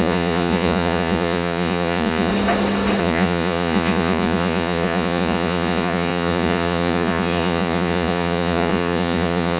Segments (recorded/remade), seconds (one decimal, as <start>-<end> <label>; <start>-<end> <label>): 0.0-2.3 remade; 2.3-3.0 recorded; 3.0-9.6 remade